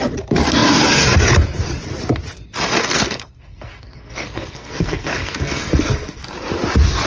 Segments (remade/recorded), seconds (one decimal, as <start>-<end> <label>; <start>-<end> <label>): 0.0-2.8 recorded; 2.8-6.2 remade; 6.2-7.1 recorded